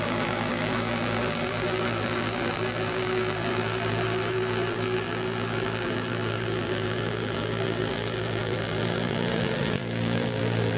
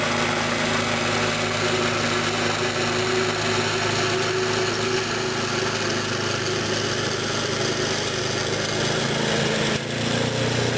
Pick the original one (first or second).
second